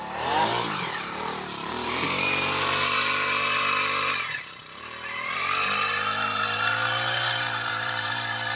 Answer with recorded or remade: remade